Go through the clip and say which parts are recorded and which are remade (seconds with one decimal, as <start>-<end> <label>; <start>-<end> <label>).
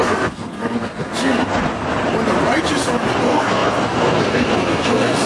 0.0-1.7 remade; 1.7-3.2 recorded; 3.2-5.3 remade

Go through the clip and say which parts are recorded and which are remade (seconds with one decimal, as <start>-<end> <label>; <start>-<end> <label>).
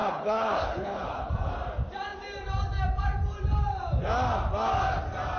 0.0-1.3 remade; 1.3-5.4 recorded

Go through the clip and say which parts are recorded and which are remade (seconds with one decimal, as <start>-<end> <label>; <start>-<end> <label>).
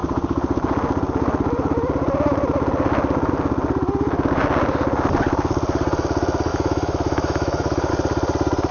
0.0-6.5 recorded; 6.5-7.9 remade; 7.9-8.7 recorded